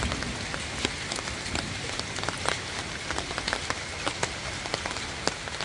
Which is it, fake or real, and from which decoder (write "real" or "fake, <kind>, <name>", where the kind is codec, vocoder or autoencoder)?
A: real